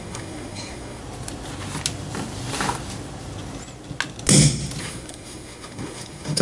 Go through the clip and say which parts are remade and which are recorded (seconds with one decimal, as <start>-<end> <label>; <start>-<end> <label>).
0.0-1.0 remade; 1.0-4.8 recorded; 4.8-6.4 remade